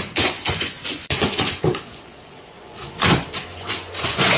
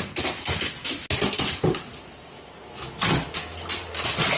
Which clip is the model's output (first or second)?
first